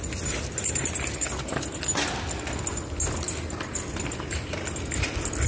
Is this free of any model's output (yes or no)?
yes